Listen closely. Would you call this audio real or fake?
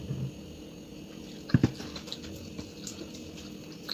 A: real